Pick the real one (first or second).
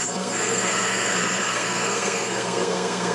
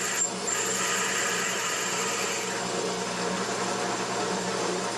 second